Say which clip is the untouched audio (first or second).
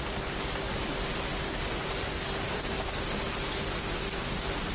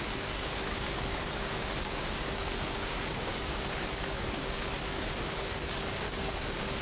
first